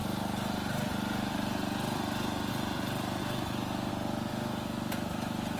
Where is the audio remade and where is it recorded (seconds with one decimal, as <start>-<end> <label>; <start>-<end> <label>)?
0.0-3.2 recorded; 3.2-3.9 remade; 3.9-4.3 recorded; 4.3-5.6 remade